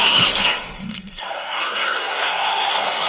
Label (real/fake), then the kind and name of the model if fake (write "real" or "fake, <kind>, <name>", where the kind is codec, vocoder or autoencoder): fake, codec, SNAC